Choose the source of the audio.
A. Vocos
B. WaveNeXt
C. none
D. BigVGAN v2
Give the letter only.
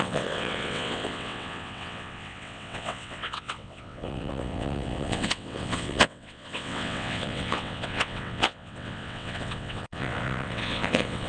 B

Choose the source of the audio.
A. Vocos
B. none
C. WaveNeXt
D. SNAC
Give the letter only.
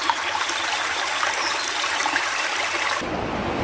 B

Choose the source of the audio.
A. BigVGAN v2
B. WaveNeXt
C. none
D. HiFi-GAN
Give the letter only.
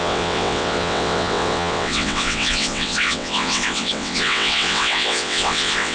B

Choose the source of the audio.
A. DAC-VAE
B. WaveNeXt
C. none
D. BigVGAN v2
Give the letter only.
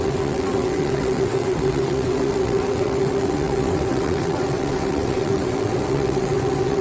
B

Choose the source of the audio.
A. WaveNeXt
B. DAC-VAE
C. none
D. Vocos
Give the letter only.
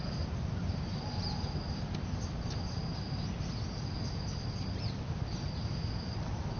C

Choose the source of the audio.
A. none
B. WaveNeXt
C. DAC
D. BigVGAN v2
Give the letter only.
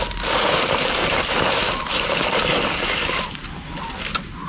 A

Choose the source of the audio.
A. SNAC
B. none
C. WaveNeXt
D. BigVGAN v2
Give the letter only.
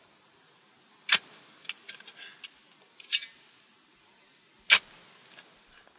B